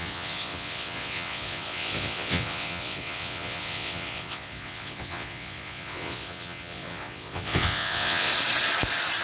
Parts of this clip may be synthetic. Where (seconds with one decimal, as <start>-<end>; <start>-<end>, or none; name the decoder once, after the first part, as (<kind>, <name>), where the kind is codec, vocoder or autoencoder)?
0.0-8.3 (vocoder, WaveNeXt)